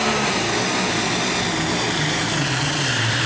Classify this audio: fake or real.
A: real